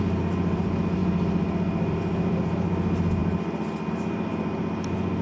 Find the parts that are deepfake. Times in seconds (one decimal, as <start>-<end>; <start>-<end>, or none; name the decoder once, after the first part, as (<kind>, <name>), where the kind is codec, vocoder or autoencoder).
0.0-1.0 (vocoder, BigVGAN v2); 1.9-3.2; 3.9-5.2